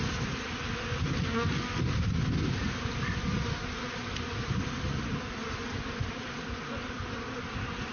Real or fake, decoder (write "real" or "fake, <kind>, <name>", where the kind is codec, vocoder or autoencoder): real